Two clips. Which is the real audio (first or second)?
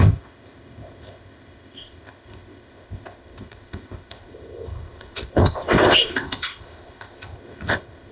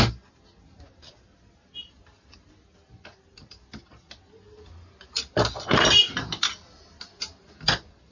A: second